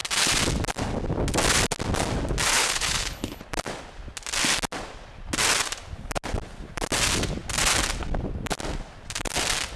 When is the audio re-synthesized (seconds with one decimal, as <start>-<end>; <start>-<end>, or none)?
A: 2.6-3.4

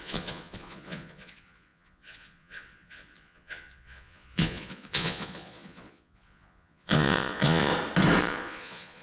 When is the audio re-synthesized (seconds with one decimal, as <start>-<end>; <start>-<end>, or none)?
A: 0.0-7.7; 8.2-9.0

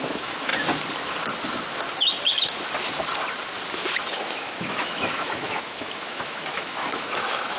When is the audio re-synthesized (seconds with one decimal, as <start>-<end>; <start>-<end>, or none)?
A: 0.0-0.5; 4.1-7.6

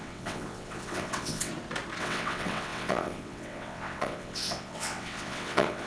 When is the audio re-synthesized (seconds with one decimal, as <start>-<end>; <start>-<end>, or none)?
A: 0.0-1.5; 2.0-5.9

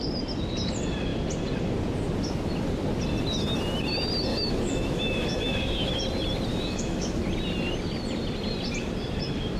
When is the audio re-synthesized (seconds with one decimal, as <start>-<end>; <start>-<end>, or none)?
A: 4.3-6.0; 6.5-7.2